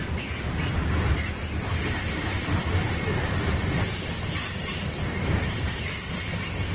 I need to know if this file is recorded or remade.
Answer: remade